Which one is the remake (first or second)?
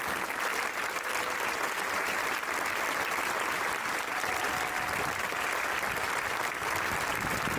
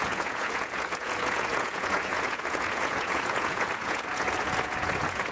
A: second